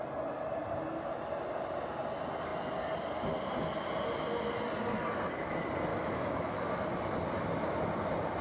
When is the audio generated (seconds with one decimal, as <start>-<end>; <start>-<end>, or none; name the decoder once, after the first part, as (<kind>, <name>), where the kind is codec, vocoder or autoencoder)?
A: 5.9-6.6 (autoencoder, DAC-VAE)